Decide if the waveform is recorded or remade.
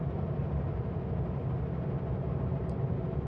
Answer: recorded